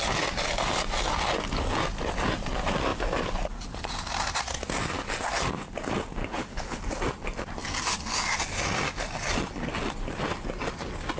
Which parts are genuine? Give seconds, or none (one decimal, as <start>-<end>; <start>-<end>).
0.0-6.2; 6.8-11.2